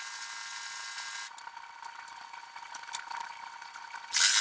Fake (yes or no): no